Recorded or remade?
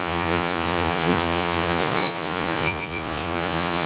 remade